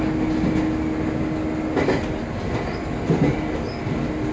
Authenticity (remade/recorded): recorded